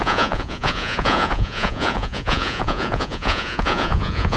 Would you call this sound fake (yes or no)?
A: yes